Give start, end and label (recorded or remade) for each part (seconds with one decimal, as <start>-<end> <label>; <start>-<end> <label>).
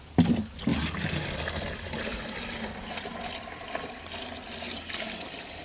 0.0-5.6 recorded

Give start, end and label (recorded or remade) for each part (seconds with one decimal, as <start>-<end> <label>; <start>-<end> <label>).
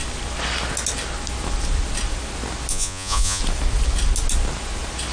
0.0-2.7 recorded; 2.7-3.4 remade; 3.4-5.1 recorded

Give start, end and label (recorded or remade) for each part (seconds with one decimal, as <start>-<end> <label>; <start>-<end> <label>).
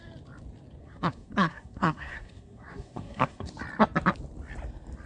0.0-0.8 recorded; 0.8-3.5 remade; 3.5-5.1 recorded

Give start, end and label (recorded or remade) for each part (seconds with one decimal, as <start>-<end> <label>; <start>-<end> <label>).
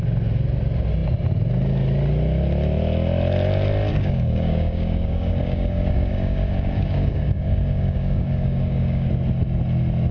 0.0-3.9 recorded; 3.9-9.1 remade; 9.1-10.1 recorded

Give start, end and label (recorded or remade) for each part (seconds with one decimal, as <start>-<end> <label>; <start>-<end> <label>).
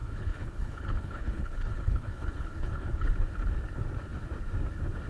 0.0-3.1 remade; 3.1-5.1 recorded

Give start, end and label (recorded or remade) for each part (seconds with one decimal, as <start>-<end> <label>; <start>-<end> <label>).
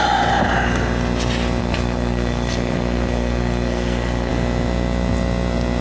0.0-1.6 recorded; 1.6-4.3 remade; 4.3-5.8 recorded